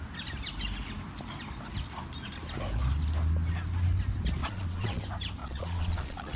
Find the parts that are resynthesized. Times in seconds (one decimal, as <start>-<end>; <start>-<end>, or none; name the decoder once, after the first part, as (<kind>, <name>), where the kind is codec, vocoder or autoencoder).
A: 4.4-5.0 (vocoder, Vocos); 5.4-6.4